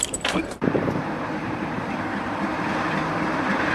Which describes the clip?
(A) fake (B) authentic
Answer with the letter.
A